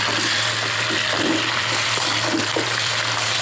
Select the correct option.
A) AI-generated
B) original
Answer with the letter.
B